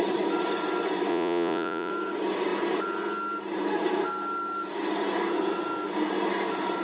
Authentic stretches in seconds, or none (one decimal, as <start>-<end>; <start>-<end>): 0.0-1.1; 1.9-6.8